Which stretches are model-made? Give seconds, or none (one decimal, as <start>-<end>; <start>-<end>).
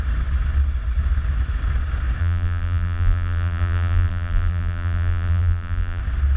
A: 2.2-6.0